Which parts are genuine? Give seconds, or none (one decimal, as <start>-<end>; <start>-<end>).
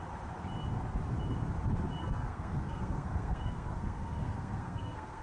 0.0-2.0